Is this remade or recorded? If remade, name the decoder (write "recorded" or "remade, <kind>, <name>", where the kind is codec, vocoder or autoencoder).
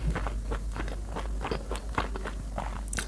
recorded